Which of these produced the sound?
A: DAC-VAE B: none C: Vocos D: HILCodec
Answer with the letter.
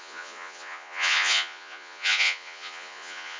C